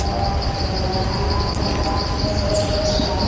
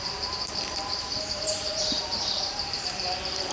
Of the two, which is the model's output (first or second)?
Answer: second